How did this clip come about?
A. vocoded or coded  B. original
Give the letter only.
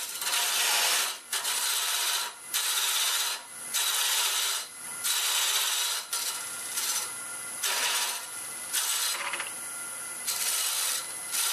B